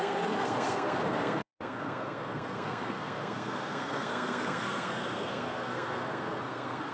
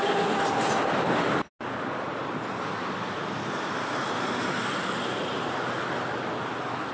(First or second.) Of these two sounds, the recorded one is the second